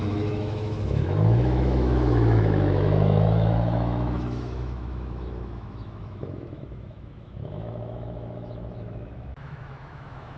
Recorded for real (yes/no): no